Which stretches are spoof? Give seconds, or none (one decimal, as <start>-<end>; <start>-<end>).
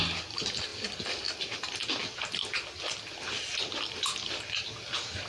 none